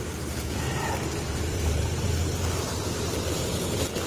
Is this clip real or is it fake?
fake